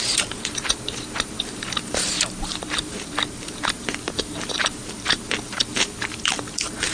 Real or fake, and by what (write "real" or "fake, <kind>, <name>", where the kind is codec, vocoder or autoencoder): fake, vocoder, BigVGAN v2